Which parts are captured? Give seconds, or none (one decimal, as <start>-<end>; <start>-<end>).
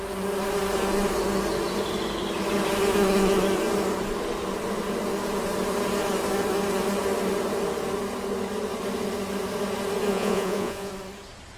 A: 0.0-10.1; 10.9-11.6